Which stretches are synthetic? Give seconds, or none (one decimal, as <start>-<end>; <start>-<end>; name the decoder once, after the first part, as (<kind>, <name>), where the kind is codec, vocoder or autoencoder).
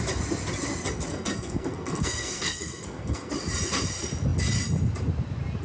1.1-3.3 (codec, SNAC)